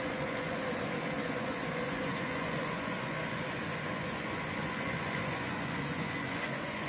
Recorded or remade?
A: remade